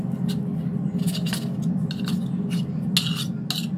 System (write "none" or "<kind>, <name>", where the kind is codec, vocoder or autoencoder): none